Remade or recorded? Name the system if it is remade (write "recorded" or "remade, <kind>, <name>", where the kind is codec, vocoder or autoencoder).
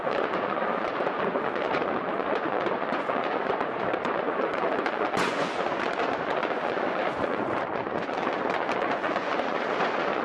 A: remade, vocoder, Vocos